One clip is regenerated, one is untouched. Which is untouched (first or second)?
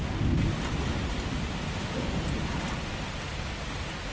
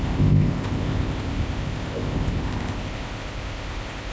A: first